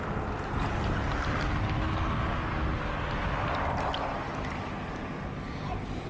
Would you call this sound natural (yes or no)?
yes